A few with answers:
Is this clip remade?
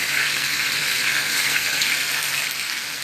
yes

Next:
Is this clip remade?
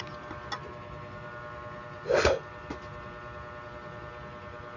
no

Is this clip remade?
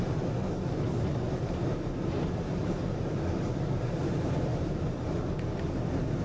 no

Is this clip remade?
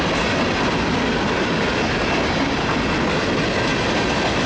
no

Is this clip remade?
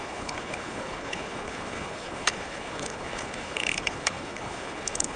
yes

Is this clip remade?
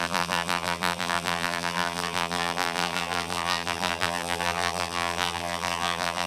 yes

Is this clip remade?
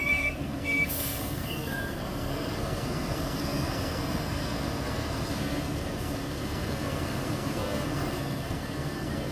yes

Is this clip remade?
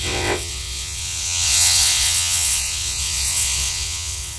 yes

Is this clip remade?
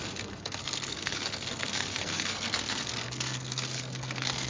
yes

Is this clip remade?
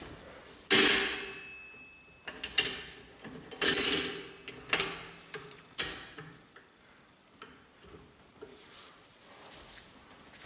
no